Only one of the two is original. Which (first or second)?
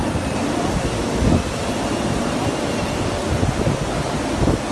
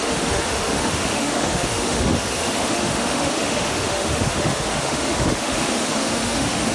first